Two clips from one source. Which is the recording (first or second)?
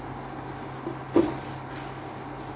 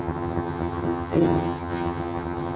first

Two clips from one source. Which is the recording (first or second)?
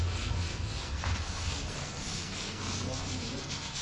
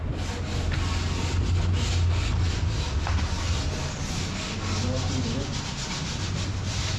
second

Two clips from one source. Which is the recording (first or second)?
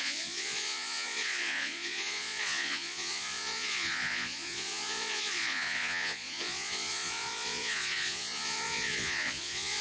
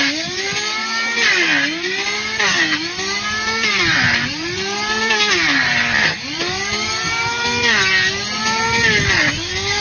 second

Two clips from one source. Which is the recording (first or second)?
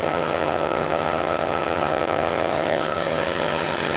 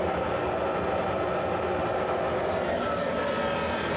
second